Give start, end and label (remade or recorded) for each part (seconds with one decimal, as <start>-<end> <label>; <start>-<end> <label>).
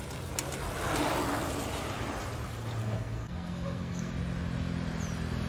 0.0-2.8 recorded; 2.8-4.1 remade; 4.1-5.5 recorded